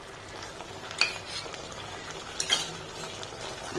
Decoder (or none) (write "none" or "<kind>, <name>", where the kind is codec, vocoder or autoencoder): none